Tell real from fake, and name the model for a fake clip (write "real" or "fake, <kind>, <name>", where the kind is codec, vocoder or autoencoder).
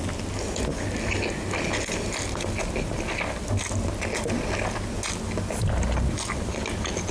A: real